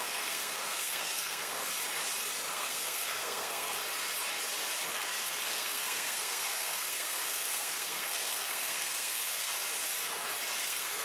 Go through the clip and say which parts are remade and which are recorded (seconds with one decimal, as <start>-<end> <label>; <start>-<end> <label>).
0.0-1.7 remade; 1.7-2.5 recorded; 2.5-3.8 remade; 3.8-4.9 recorded; 4.9-9.5 remade; 9.5-10.6 recorded; 10.6-11.0 remade